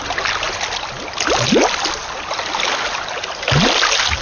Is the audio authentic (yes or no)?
yes